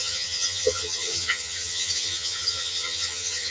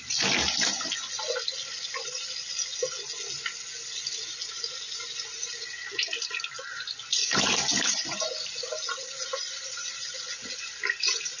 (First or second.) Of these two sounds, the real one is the second